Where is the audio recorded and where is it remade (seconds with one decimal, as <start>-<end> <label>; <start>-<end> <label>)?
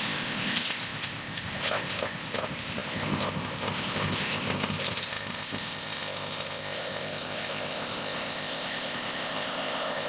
0.0-10.1 remade